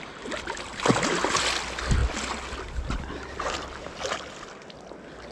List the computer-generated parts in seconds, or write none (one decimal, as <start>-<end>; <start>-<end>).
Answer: none